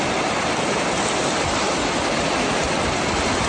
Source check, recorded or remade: recorded